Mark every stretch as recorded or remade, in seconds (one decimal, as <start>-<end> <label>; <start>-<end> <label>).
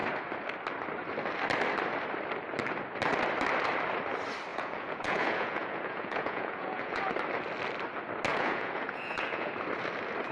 0.0-4.5 recorded; 4.5-7.1 remade; 7.1-8.3 recorded; 8.3-9.5 remade; 9.5-10.3 recorded